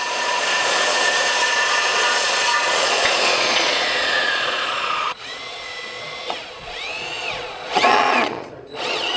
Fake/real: fake